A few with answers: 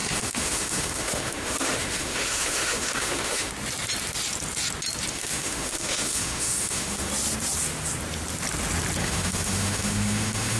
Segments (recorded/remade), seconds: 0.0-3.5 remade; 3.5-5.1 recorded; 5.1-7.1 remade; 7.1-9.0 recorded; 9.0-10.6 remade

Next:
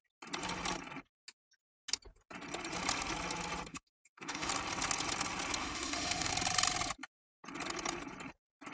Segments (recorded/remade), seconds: 0.0-3.7 recorded; 3.7-4.5 remade; 4.5-5.6 recorded; 5.6-6.3 remade; 6.3-8.7 recorded

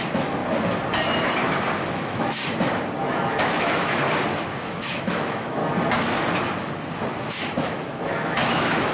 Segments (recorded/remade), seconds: 0.0-0.4 remade; 0.4-1.9 recorded; 1.9-2.4 remade; 2.4-3.1 recorded; 3.1-4.0 remade; 4.0-4.6 recorded; 4.6-5.6 remade; 5.6-7.3 recorded; 7.3-8.9 remade

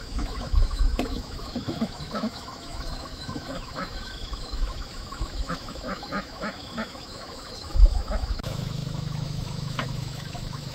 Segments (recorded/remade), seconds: 0.0-10.7 remade

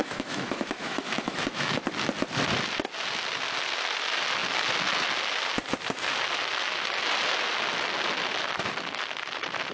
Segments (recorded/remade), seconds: 0.0-1.8 remade; 1.8-9.7 recorded

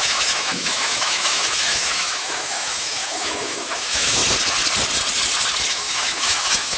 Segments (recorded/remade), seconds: 0.0-4.2 remade; 4.2-5.7 recorded; 5.7-6.8 remade